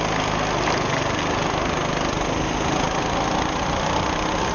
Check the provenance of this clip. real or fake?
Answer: real